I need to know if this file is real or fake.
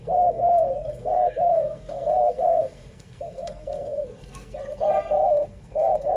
fake